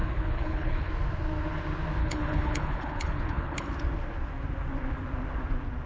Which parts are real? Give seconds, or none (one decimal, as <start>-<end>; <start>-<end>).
0.9-2.0; 3.7-5.9